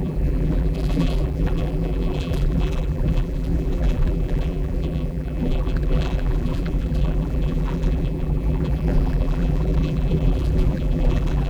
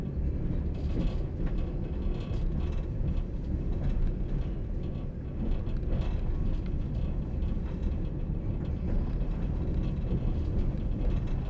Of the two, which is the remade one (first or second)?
first